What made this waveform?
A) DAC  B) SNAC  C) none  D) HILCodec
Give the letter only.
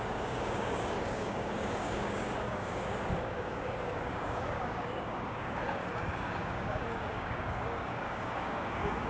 A